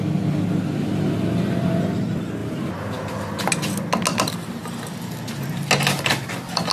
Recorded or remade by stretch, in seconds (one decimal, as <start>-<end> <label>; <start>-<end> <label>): 0.0-6.7 recorded